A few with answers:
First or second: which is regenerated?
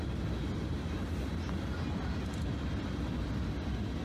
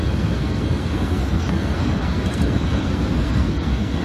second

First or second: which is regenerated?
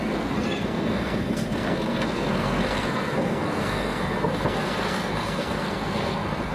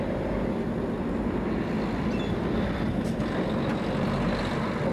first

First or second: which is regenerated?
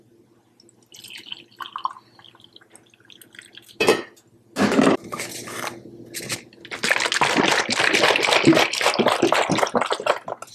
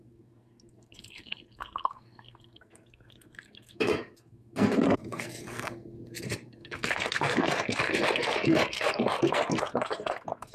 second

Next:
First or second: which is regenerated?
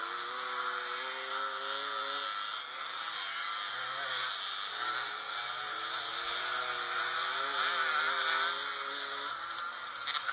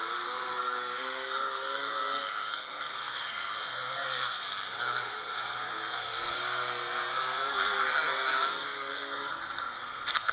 second